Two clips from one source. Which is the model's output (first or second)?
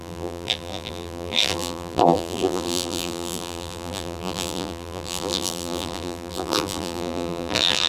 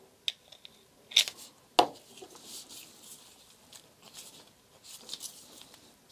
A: first